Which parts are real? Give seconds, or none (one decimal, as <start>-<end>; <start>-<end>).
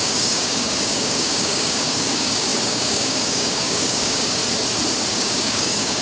4.4-5.1